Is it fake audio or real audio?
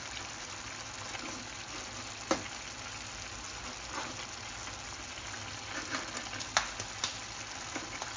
real